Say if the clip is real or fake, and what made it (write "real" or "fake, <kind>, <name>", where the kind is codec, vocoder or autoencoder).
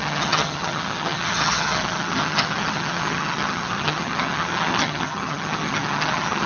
fake, vocoder, HiFi-GAN